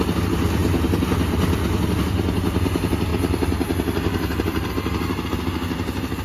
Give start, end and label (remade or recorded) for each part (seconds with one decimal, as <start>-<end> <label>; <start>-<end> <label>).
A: 0.0-3.1 recorded; 3.1-4.7 remade; 4.7-6.2 recorded